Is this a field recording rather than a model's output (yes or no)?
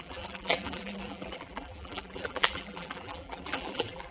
no